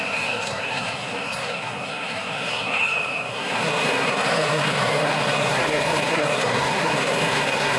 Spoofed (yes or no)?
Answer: yes